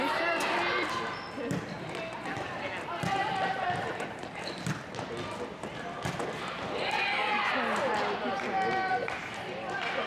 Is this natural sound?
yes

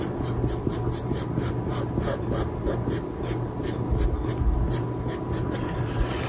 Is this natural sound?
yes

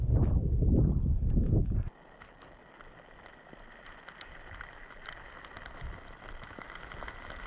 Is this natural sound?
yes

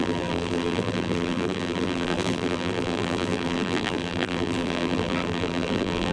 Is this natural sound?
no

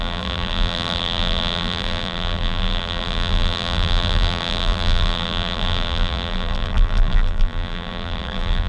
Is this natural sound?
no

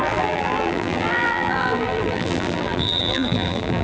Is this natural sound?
no